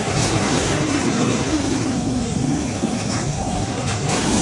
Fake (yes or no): yes